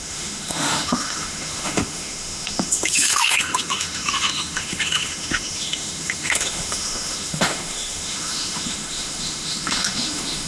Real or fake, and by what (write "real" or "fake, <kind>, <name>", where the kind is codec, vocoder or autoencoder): fake, autoencoder, DAC-VAE